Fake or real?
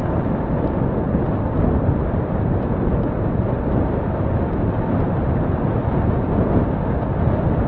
real